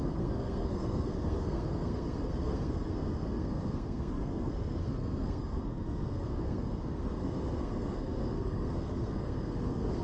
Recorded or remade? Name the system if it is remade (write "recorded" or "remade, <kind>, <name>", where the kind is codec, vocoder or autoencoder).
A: remade, codec, SNAC